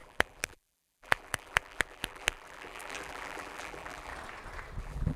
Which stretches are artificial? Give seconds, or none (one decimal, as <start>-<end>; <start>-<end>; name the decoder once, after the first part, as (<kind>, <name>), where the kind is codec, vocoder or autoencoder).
0.0-4.1 (vocoder, BigVGAN v2); 4.8-5.2